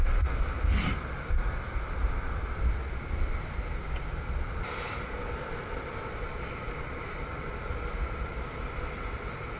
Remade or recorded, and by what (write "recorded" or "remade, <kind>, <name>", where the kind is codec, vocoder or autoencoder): recorded